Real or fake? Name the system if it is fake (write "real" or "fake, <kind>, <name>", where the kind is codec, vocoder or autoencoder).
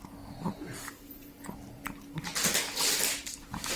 real